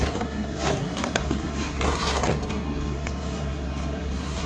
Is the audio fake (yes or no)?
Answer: yes